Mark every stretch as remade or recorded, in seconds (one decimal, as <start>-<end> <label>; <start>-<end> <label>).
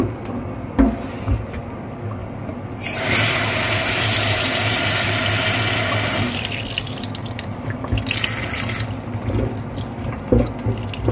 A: 0.0-2.2 recorded; 2.2-6.7 remade; 6.7-11.1 recorded